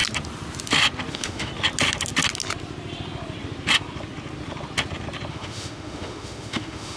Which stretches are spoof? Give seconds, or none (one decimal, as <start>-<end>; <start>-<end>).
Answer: 1.1-1.5; 5.3-7.0